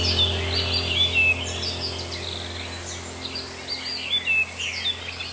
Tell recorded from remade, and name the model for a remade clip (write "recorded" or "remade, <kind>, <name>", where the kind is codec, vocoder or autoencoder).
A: recorded